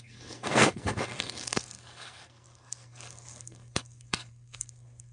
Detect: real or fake fake